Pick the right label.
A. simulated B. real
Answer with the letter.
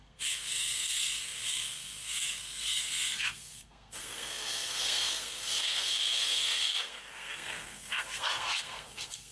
A